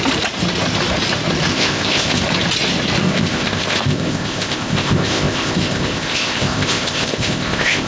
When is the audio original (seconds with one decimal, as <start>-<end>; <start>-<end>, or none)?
0.0-1.5; 2.2-3.0